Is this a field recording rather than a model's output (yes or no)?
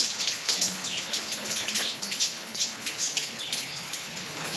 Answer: no